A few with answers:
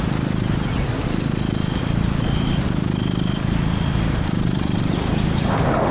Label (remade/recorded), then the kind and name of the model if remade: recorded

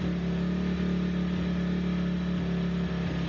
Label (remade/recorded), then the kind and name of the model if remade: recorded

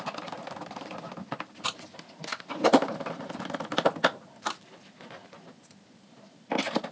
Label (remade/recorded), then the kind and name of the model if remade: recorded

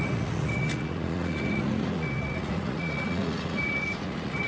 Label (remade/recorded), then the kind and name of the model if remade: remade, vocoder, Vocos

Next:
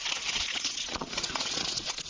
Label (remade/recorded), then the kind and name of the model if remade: remade, vocoder, Vocos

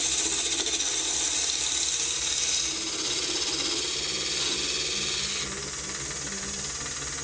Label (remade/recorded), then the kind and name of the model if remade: recorded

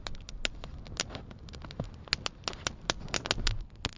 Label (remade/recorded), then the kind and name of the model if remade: recorded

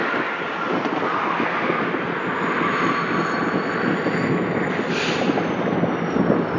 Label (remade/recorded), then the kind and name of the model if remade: recorded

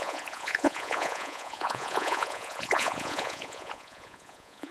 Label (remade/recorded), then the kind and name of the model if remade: remade, vocoder, Vocos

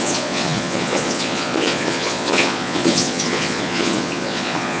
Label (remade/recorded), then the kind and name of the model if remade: remade, vocoder, Vocos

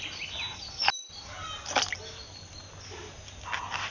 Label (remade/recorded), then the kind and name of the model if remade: recorded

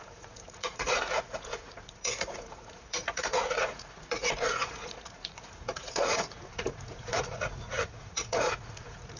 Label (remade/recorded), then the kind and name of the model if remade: remade, vocoder, Vocos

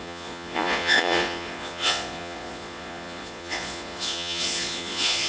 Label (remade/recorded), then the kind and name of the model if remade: remade, vocoder, Vocos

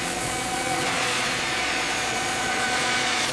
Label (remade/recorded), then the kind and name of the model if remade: remade, vocoder, Vocos